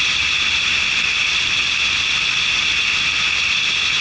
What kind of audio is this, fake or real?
real